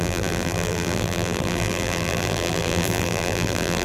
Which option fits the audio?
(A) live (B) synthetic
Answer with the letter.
B